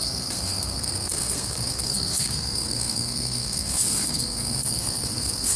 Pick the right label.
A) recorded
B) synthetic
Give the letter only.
B